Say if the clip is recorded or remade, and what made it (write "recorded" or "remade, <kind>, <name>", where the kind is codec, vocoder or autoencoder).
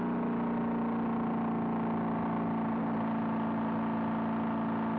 recorded